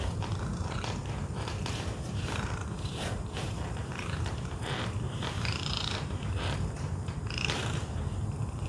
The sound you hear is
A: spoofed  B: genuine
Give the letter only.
A